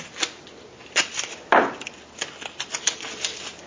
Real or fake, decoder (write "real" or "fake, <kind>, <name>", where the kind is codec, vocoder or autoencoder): real